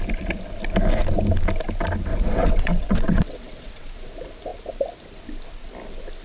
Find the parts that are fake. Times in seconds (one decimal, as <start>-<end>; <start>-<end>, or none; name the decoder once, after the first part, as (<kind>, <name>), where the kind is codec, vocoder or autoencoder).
2.1-3.9 (vocoder, WaveNeXt)